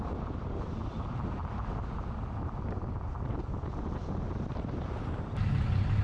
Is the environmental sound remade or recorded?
remade